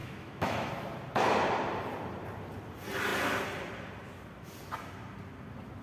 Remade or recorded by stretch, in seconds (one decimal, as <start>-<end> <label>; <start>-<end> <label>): 0.0-0.7 remade; 0.7-5.8 recorded